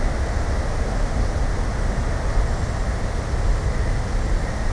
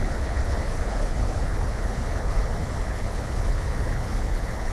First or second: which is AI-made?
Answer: second